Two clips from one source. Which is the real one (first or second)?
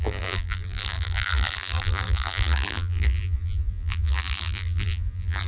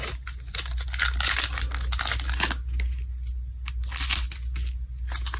second